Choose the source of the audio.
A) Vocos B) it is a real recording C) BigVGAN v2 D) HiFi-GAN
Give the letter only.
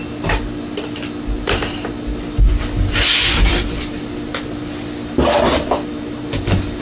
B